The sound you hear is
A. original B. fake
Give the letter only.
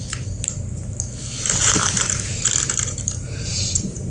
B